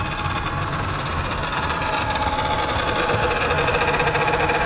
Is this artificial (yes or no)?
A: no